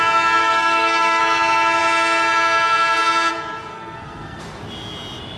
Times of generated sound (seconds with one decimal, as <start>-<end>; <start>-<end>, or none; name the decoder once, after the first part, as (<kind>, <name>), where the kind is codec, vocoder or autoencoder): 0.4-1.2 (codec, SNAC); 3.7-4.4